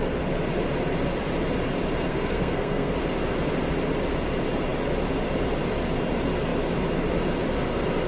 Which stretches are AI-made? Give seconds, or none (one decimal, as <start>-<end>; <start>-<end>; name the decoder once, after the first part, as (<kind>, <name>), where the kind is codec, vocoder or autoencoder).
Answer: 2.1-2.9 (codec, SNAC)